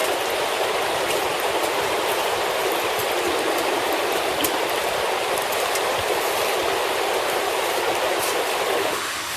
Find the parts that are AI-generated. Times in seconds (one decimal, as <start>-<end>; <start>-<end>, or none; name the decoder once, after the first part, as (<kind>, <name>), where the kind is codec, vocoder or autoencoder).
8.8-9.4 (autoencoder, DAC-VAE)